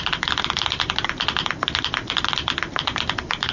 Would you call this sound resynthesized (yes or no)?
no